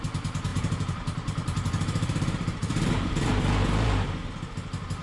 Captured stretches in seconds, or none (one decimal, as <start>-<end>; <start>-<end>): 0.0-0.5; 3.4-5.0